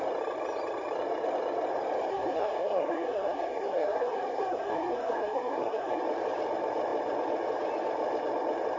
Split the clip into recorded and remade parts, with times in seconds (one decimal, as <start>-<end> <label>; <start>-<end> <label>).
0.0-2.1 recorded; 2.1-6.0 remade; 6.0-8.8 recorded